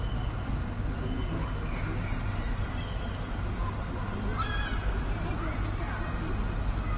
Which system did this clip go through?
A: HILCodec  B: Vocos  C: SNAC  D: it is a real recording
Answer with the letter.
D